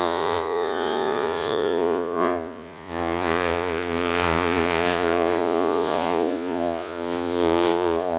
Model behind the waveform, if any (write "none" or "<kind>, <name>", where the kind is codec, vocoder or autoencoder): vocoder, Vocos